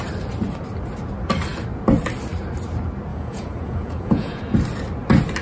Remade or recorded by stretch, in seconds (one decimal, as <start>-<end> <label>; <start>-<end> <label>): 0.0-3.1 recorded; 3.1-4.4 remade; 4.4-5.4 recorded